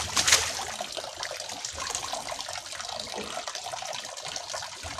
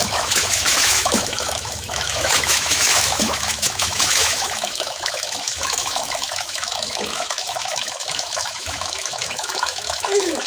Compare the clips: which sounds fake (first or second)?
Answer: second